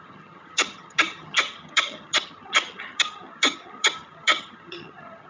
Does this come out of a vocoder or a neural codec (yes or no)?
yes